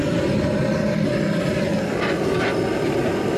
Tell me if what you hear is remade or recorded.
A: recorded